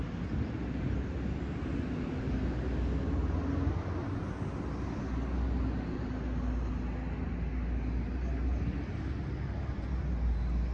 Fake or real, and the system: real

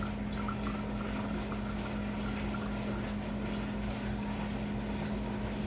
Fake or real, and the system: real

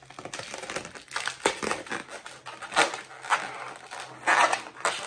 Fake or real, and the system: real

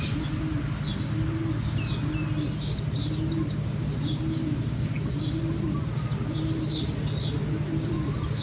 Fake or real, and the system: real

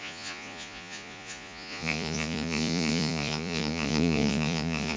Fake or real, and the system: fake, vocoder, Vocos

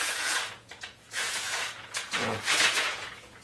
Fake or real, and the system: fake, vocoder, Vocos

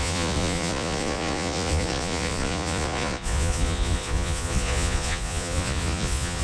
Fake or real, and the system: fake, vocoder, Vocos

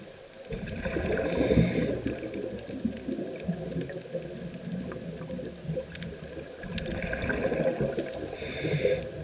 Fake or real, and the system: real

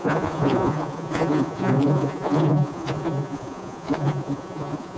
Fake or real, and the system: fake, vocoder, Vocos